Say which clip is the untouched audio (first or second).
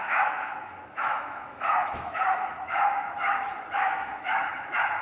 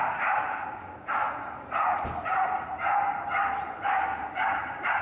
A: second